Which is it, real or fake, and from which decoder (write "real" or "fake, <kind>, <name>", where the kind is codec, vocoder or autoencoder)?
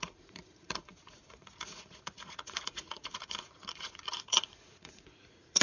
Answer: fake, vocoder, Vocos